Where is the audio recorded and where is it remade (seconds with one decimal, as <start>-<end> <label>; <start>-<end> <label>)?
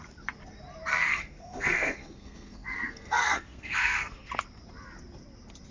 0.0-0.9 recorded; 0.9-4.3 remade; 4.3-5.7 recorded